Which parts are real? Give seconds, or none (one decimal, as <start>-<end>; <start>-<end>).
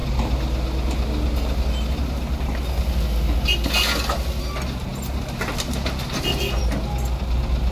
0.0-7.7